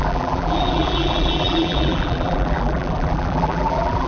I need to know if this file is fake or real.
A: fake